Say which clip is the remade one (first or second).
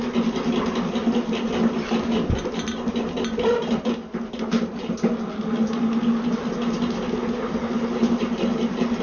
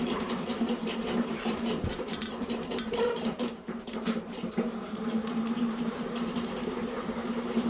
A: second